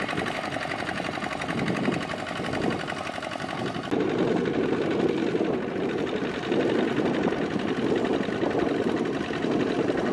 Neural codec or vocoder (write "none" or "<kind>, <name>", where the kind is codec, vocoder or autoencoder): none